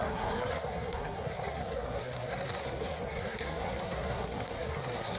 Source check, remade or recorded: remade